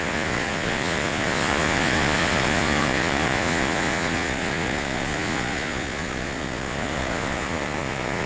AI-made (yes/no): yes